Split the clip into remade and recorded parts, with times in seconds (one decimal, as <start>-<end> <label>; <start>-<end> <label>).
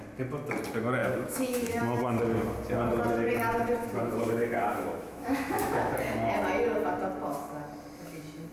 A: 0.0-1.0 recorded; 1.0-1.8 remade; 1.8-3.8 recorded; 3.8-5.9 remade; 5.9-8.5 recorded